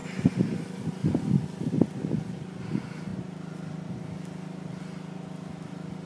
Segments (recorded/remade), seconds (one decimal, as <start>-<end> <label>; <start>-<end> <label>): 0.0-2.6 remade; 2.6-6.1 recorded

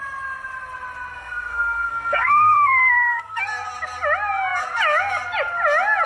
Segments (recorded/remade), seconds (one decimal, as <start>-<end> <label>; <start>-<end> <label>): 0.0-1.1 recorded; 1.1-3.4 remade; 3.4-6.1 recorded

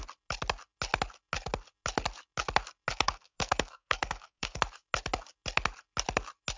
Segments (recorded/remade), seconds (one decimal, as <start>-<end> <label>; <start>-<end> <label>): 0.0-2.9 recorded; 2.9-4.6 remade; 4.6-6.6 recorded